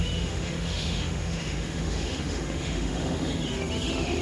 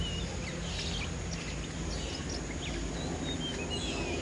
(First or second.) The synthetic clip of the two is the first